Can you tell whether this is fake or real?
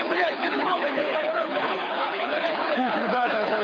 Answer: fake